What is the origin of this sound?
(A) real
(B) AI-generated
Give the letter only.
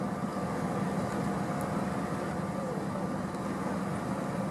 A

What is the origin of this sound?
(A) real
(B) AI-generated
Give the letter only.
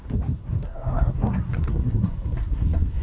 B